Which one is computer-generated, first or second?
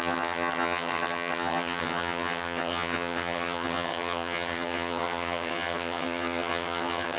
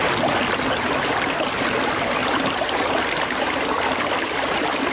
first